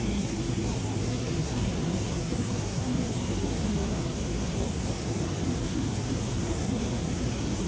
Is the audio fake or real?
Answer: fake